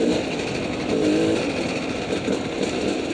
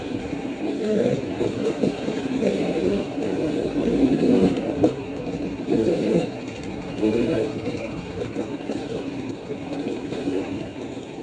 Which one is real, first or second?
first